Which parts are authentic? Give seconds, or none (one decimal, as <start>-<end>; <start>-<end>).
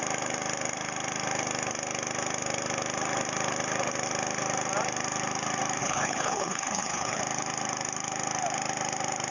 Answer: 0.0-5.8; 7.2-9.3